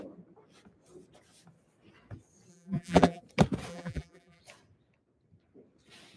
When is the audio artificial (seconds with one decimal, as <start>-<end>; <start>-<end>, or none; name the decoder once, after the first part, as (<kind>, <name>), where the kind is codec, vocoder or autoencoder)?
2.5-3.2 (vocoder, BigVGAN v2); 3.7-4.4